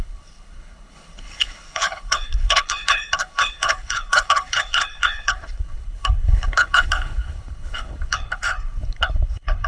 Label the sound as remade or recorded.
remade